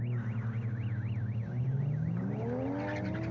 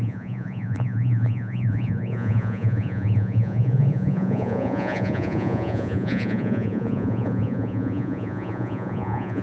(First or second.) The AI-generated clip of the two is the second